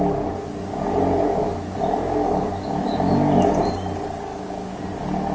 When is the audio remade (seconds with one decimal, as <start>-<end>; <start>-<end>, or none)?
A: 1.4-3.1; 4.3-4.8